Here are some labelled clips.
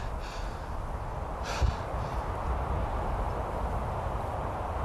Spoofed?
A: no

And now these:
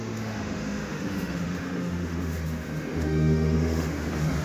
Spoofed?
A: yes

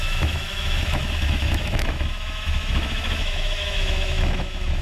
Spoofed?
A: yes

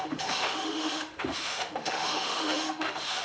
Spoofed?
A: yes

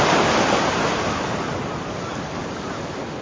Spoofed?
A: no